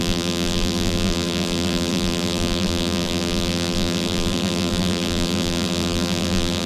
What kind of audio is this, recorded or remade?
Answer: remade